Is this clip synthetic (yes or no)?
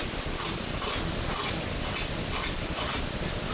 no